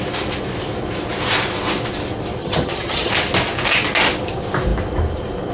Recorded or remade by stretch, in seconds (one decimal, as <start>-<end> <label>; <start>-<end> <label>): 0.0-2.4 recorded; 2.4-3.1 remade; 3.1-5.5 recorded